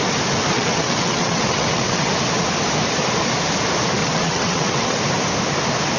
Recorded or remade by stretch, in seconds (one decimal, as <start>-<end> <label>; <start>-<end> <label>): 0.0-0.5 recorded; 0.5-2.1 remade; 2.1-4.0 recorded; 4.0-5.0 remade; 5.0-6.0 recorded